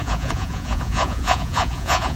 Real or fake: fake